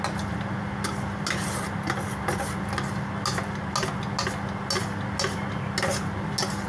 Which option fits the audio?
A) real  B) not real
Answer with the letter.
A